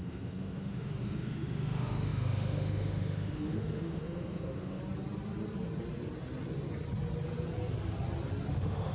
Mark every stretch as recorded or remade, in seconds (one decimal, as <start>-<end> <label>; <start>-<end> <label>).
0.0-4.8 remade; 4.8-8.5 recorded; 8.5-8.9 remade